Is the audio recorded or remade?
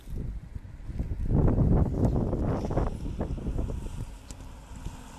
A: recorded